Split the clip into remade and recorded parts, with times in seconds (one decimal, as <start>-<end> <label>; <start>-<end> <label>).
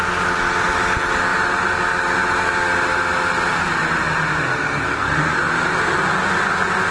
0.0-4.5 recorded; 4.5-5.4 remade; 5.4-6.9 recorded